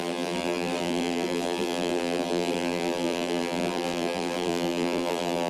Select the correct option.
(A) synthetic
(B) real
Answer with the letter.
A